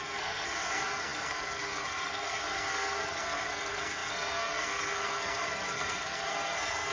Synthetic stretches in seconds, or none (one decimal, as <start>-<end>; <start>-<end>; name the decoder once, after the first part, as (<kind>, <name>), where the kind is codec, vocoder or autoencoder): 0.0-6.9 (codec, SNAC)